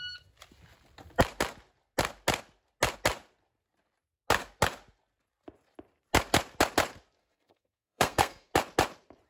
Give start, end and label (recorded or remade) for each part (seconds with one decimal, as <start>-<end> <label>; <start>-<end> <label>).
0.0-7.2 recorded; 7.2-8.5 remade; 8.5-9.3 recorded